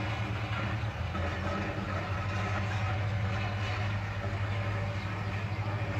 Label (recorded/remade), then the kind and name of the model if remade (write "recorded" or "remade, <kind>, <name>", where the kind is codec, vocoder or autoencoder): recorded